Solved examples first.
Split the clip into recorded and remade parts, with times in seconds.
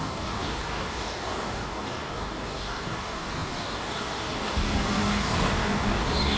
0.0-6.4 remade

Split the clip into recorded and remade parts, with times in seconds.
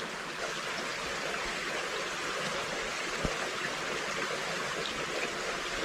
0.0-5.8 recorded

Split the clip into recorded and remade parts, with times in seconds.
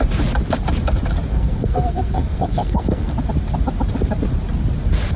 0.0-1.3 recorded; 1.3-3.1 remade; 3.1-5.2 recorded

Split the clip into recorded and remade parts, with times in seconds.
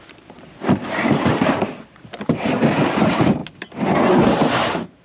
0.0-3.4 remade; 3.4-4.5 recorded; 4.5-5.0 remade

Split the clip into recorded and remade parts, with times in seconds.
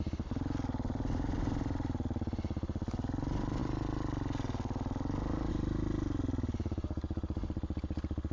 0.0-8.3 recorded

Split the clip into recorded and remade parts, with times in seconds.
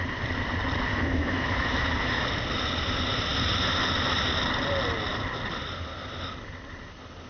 0.0-0.9 recorded; 0.9-2.2 remade; 2.2-7.3 recorded